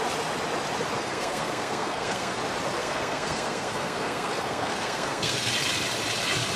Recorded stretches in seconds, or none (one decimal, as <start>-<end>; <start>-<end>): 0.0-1.0; 2.4-2.8; 5.5-6.6